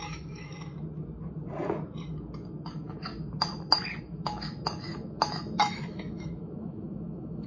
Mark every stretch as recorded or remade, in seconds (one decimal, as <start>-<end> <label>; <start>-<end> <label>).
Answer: 0.0-0.7 remade; 0.7-2.7 recorded; 2.7-3.1 remade; 3.1-4.0 recorded; 4.0-7.5 remade